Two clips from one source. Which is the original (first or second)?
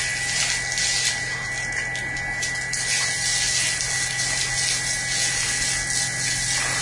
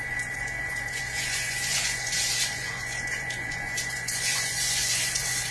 first